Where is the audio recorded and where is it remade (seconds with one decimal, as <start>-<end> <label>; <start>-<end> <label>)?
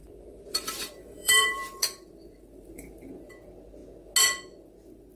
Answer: 0.0-3.1 remade; 3.1-5.2 recorded